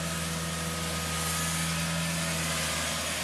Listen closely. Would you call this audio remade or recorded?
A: recorded